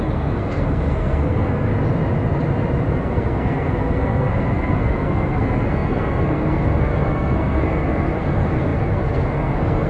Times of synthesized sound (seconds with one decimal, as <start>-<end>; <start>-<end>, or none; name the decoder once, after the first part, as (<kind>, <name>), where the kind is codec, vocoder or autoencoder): 0.0-1.7 (codec, SNAC); 2.8-9.9